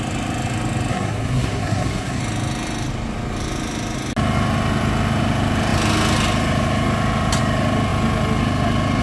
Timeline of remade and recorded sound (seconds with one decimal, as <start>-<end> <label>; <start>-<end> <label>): 0.0-0.9 recorded; 0.9-2.2 remade; 2.2-9.0 recorded